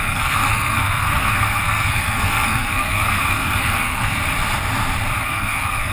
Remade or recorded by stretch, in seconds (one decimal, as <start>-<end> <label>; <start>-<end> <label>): 0.0-4.2 remade; 4.2-5.2 recorded; 5.2-5.9 remade